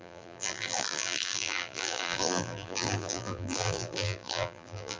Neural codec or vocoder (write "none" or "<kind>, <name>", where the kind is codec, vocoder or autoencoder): vocoder, BigVGAN v2